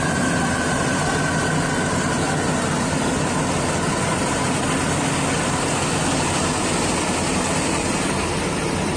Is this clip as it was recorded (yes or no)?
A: yes